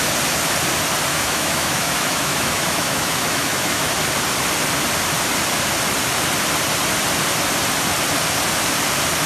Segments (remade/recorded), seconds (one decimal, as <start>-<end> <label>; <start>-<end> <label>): 0.0-1.1 recorded; 1.1-3.9 remade; 3.9-9.3 recorded